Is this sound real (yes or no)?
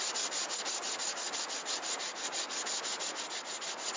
yes